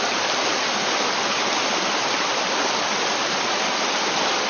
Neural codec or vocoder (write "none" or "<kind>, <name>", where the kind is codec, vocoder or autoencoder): none